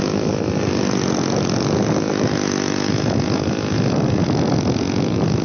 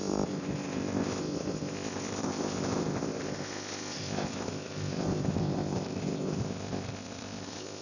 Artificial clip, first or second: second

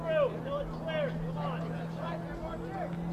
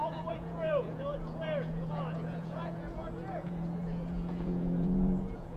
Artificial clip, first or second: second